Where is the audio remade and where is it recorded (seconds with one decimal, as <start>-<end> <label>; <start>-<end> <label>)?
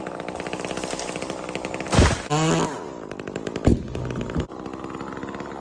0.0-5.6 recorded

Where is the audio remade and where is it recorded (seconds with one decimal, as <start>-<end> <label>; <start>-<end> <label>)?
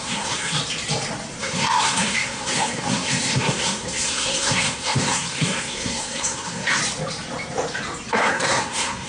0.0-0.6 remade; 0.6-1.4 recorded; 1.4-6.8 remade; 6.8-8.1 recorded; 8.1-9.1 remade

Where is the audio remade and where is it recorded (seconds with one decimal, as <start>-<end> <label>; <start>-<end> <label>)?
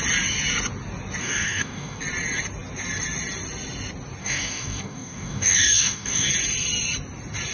0.0-1.2 recorded; 1.2-2.0 remade; 2.0-4.2 recorded; 4.2-6.3 remade; 6.3-7.5 recorded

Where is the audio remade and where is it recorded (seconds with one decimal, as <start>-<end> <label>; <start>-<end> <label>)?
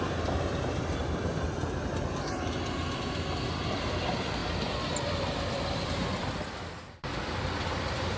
0.0-1.0 remade; 1.0-3.6 recorded; 3.6-4.4 remade; 4.4-5.0 recorded; 5.0-8.2 remade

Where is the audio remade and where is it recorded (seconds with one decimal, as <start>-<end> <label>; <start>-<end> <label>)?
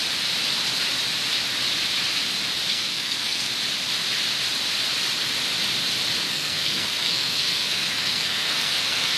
0.0-2.7 recorded; 2.7-3.5 remade; 3.5-6.3 recorded; 6.3-9.2 remade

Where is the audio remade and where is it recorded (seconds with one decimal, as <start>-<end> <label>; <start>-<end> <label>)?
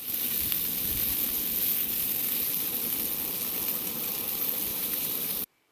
0.0-4.7 recorded; 4.7-5.2 remade; 5.2-5.7 recorded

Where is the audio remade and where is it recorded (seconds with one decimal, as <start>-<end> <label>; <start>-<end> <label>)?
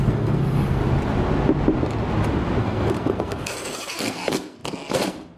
0.0-0.8 remade; 0.8-2.6 recorded; 2.6-5.4 remade